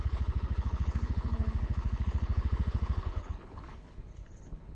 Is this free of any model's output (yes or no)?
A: no